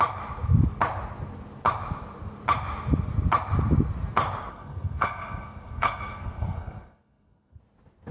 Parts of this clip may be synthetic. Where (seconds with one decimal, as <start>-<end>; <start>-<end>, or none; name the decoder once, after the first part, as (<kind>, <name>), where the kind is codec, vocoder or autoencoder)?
4.5-7.6 (codec, SNAC)